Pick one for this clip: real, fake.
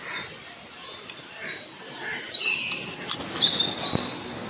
real